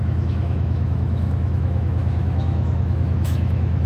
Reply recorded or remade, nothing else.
remade